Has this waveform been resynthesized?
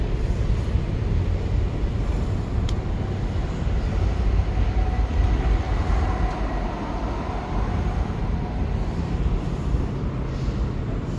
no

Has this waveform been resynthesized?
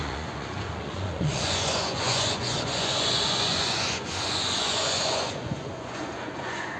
yes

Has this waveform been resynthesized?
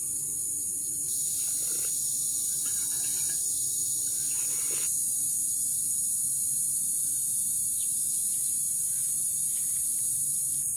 no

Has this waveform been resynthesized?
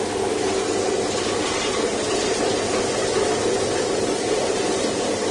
no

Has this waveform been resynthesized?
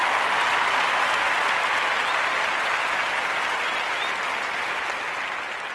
no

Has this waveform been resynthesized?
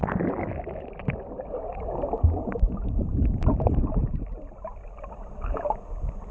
no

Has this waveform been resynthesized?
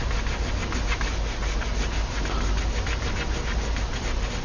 no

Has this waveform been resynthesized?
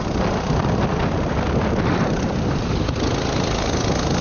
no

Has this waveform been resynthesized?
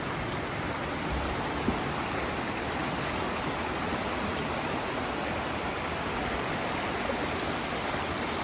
no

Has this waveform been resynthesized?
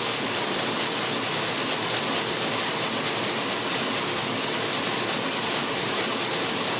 no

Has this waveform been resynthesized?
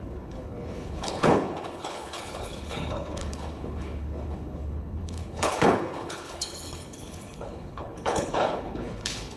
yes